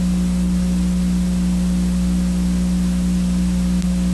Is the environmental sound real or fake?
real